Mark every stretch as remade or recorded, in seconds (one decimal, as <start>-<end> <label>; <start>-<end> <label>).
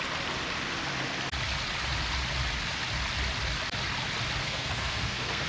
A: 0.0-4.4 recorded; 4.4-5.5 remade